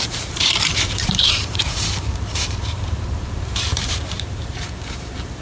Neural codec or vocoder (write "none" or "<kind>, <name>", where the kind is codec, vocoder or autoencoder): vocoder, BigVGAN v2